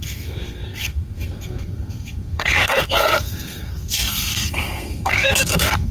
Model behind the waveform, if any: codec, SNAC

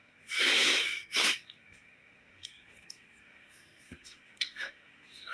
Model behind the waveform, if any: codec, SNAC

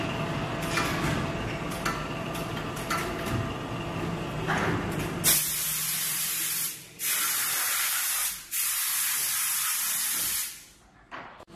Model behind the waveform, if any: none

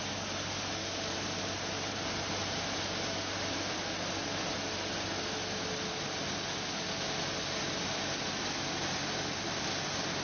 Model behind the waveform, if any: none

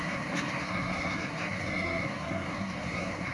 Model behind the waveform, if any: codec, SNAC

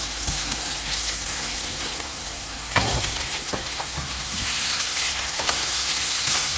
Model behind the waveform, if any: codec, SNAC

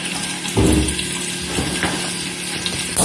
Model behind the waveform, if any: none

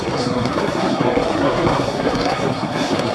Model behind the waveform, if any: codec, SNAC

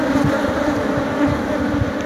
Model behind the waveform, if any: none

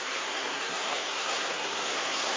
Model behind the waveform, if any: codec, SNAC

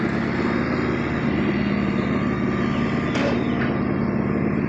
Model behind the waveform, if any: none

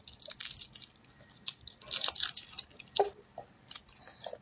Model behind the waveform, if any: none